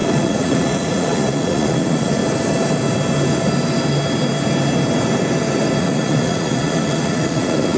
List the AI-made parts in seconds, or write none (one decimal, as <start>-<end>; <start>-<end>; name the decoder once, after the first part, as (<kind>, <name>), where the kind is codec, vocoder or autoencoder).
0.0-2.2 (vocoder, Vocos); 5.8-7.8